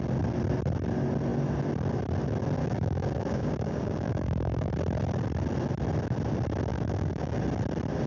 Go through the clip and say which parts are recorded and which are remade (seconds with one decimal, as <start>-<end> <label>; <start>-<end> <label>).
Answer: 0.0-2.6 recorded; 2.6-4.7 remade; 4.7-6.7 recorded; 6.7-7.4 remade; 7.4-8.1 recorded